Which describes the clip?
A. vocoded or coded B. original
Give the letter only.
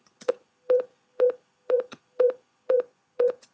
A